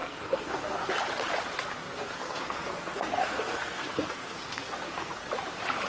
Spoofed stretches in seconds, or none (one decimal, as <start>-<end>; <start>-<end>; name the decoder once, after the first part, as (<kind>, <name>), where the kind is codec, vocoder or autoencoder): 0.0-0.9 (codec, SNAC); 1.8-5.3